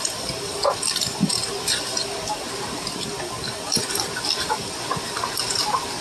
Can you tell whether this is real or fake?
fake